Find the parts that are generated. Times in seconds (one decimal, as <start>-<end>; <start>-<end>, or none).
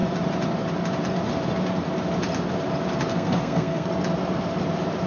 3.1-3.9